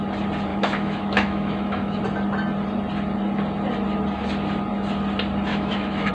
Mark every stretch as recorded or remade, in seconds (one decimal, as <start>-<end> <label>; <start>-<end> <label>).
0.0-0.5 recorded; 0.5-2.0 remade; 2.0-5.5 recorded; 5.5-6.1 remade